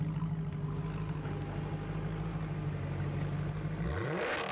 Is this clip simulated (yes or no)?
no